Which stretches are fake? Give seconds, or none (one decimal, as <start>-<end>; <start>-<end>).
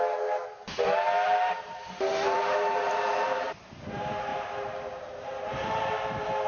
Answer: 1.0-3.7